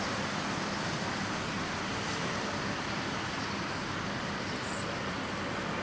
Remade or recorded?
recorded